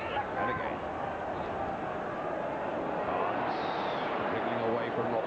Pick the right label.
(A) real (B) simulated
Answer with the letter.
A